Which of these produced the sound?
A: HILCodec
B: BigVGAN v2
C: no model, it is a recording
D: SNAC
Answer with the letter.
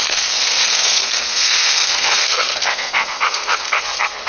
D